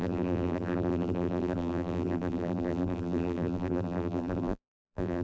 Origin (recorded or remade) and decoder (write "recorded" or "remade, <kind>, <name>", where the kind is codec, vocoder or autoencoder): remade, vocoder, BigVGAN v2